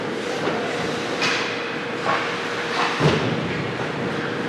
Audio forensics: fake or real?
real